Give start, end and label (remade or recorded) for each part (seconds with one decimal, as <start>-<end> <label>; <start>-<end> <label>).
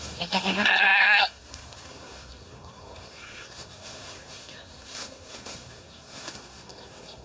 0.0-7.2 remade